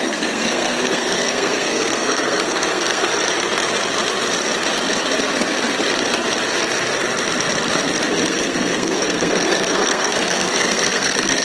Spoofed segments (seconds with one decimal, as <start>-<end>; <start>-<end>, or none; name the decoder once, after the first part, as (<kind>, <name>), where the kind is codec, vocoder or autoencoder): 0.0-3.1 (codec, SNAC); 8.3-11.4